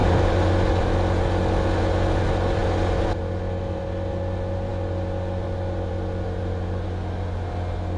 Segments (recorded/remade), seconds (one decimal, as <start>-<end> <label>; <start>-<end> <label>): 0.0-8.0 recorded